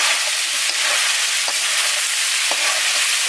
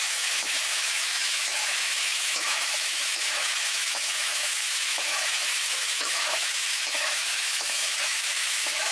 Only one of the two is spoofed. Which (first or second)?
second